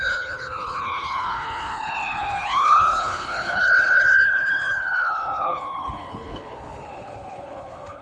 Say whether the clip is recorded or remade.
remade